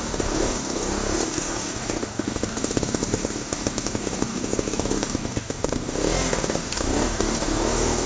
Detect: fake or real fake